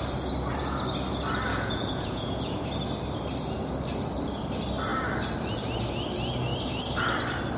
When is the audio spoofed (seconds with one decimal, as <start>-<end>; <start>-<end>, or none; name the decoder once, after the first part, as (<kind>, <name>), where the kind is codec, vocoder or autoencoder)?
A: 1.5-2.7 (vocoder, Vocos)